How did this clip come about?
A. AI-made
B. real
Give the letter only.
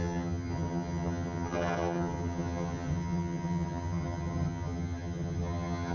A